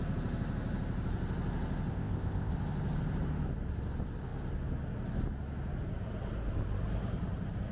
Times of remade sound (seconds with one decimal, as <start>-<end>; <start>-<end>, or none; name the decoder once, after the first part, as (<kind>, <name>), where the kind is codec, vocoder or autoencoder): 1.9-2.5 (codec, ZipCodec)

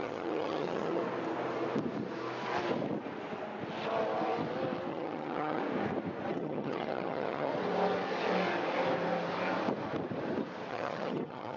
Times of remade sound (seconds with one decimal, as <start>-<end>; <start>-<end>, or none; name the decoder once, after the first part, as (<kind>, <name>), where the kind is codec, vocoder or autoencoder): 0.0-1.0 (vocoder, HiFi-GAN); 4.9-5.6; 6.3-7.5; 10.7-11.6